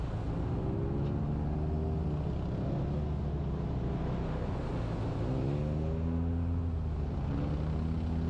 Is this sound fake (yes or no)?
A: no